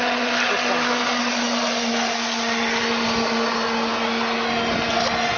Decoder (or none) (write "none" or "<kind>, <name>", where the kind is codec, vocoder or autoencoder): none